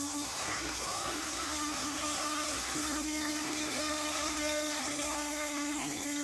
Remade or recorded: remade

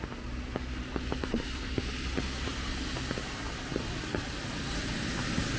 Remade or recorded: recorded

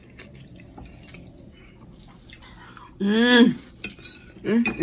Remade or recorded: recorded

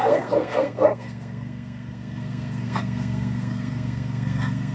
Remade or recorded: remade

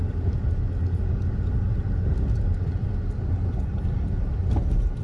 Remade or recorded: recorded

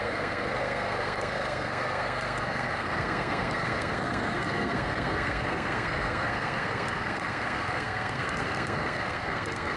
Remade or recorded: remade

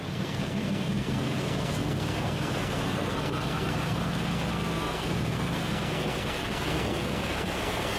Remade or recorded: remade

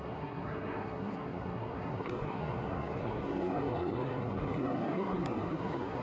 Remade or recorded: remade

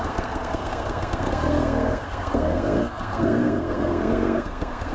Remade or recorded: remade